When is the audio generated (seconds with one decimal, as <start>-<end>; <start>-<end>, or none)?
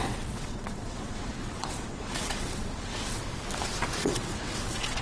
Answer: 0.0-3.2; 4.0-5.0